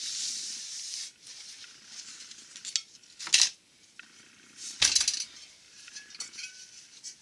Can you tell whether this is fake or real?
real